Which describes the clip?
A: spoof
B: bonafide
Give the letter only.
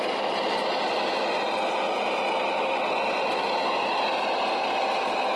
B